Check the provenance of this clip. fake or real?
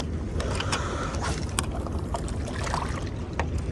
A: real